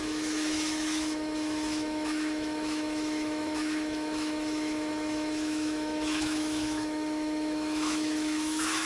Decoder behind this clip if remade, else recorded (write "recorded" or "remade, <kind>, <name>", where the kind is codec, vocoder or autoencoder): remade, autoencoder, DAC-VAE